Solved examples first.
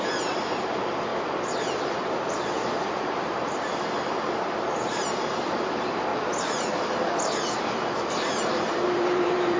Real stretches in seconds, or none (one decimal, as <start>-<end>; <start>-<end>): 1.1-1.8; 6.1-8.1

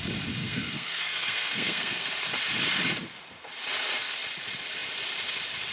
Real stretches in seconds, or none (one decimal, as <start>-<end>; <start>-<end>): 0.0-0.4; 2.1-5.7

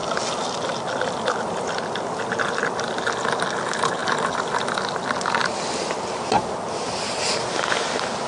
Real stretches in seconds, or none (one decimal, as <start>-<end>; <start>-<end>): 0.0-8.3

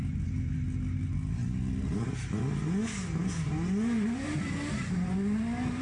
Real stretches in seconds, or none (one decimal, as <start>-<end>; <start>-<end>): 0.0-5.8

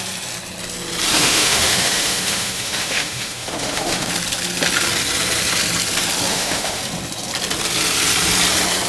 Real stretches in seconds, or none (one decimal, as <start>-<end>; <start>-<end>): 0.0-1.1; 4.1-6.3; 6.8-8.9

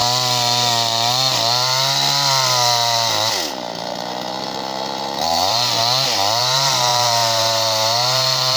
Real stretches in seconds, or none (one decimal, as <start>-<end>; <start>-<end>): 0.0-3.5; 5.8-6.4

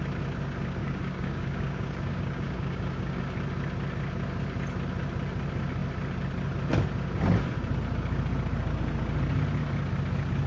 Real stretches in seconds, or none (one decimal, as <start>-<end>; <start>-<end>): 0.0-0.8; 3.2-10.5

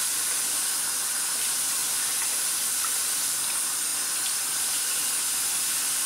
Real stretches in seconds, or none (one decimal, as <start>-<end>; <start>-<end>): 3.9-6.1